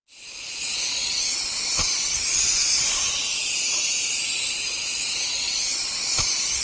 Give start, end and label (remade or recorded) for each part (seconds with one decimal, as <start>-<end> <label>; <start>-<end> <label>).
0.0-6.6 remade